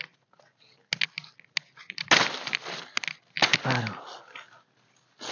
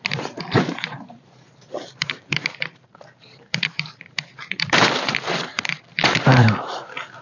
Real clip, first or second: first